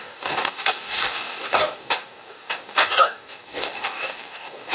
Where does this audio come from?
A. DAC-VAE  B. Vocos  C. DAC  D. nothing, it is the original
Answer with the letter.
C